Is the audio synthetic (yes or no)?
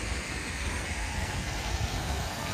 yes